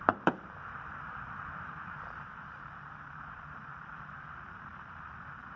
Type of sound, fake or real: fake